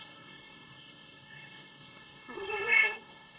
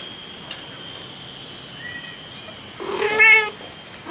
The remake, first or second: first